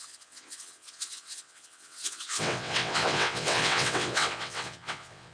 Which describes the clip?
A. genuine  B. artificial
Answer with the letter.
B